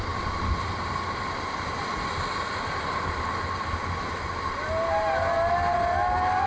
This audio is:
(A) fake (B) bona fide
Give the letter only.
B